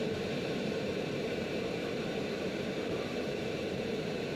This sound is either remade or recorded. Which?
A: remade